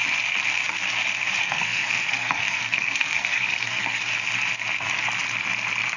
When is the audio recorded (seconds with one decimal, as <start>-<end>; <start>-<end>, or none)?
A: 0.0-1.4; 4.0-6.0

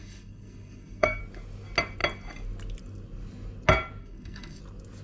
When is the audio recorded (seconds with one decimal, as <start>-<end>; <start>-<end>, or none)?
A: 1.2-4.0; 4.6-5.0

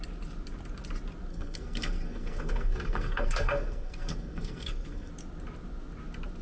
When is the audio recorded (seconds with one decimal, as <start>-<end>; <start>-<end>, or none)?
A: 0.0-1.3; 5.1-6.4

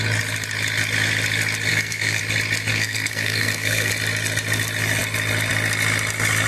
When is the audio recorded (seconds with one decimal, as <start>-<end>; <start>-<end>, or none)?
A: 0.0-1.7; 2.2-2.7; 3.9-6.5